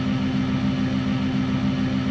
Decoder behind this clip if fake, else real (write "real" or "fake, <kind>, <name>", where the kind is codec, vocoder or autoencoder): real